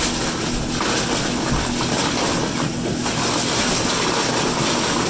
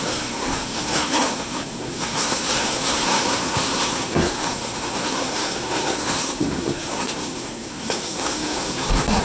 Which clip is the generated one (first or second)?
second